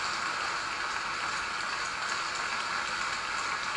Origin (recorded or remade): recorded